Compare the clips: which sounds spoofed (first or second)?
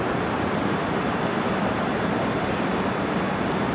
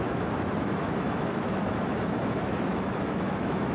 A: second